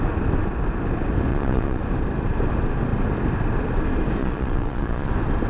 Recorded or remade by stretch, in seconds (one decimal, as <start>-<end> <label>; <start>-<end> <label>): 0.0-1.3 recorded; 1.3-1.8 remade; 1.8-4.2 recorded; 4.2-5.1 remade; 5.1-5.5 recorded